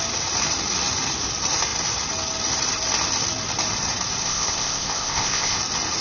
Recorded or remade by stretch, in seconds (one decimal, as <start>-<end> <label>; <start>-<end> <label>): 0.0-4.2 recorded; 4.2-5.6 remade; 5.6-6.0 recorded